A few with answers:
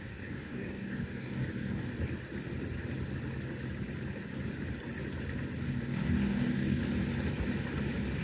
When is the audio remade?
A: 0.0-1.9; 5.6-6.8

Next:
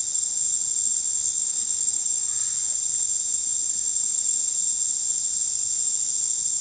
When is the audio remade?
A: 1.2-2.0

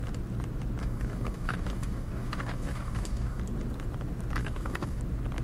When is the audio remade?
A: 0.8-3.4; 4.4-5.0